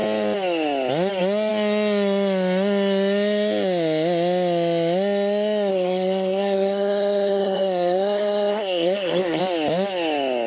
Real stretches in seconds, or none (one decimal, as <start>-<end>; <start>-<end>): 0.0-5.7; 9.4-10.5